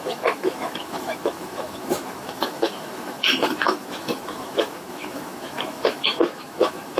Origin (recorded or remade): remade